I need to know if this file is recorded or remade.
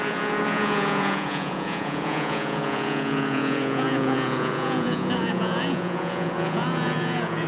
remade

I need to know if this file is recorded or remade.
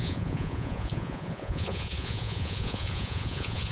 remade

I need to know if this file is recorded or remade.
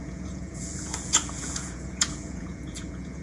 remade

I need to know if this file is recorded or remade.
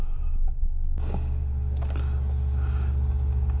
recorded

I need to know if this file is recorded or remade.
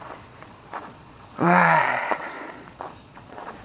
remade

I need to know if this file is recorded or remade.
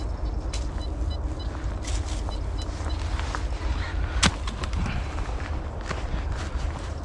recorded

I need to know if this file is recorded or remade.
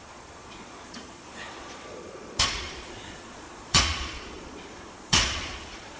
remade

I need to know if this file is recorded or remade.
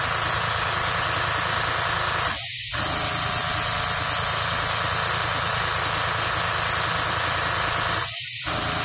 recorded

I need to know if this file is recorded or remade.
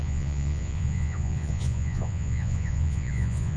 remade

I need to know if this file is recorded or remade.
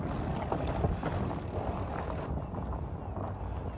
recorded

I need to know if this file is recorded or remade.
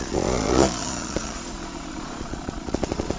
remade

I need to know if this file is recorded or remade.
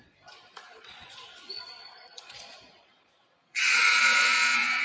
remade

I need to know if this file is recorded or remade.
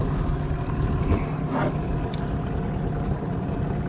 recorded